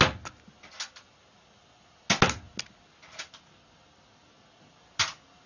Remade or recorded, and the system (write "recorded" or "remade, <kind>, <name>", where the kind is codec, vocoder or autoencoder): recorded